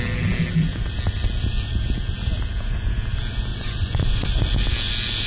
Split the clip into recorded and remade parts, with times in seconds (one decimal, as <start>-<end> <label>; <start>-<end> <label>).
0.0-3.5 recorded; 3.5-4.5 remade; 4.5-5.3 recorded